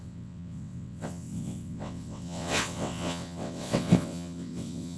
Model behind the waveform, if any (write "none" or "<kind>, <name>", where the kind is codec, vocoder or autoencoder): vocoder, WaveNeXt